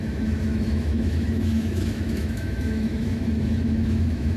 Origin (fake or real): fake